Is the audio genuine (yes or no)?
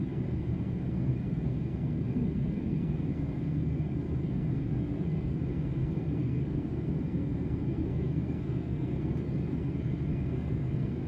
no